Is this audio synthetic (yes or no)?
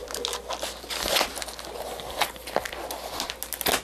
no